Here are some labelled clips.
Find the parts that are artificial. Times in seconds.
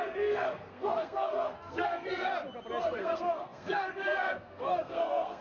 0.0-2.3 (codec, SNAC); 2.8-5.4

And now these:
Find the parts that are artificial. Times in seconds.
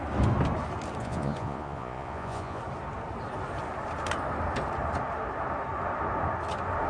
1.0-2.6 (vocoder, Vocos)